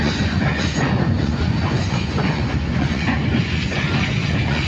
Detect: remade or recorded remade